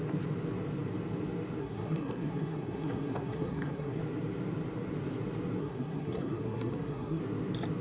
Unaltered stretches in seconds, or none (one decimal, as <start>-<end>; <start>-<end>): 0.0-1.6; 4.0-5.6; 7.2-7.8